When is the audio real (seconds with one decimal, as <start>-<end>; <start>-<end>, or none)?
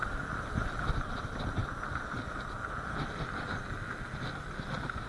0.0-5.1